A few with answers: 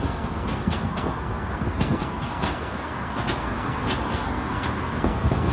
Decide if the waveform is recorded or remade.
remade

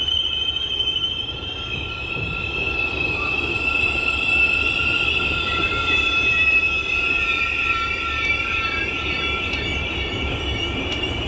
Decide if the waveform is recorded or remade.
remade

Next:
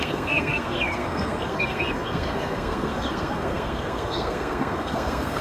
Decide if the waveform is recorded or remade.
remade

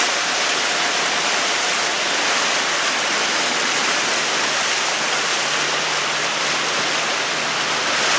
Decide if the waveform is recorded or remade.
remade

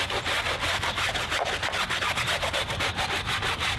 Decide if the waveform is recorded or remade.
recorded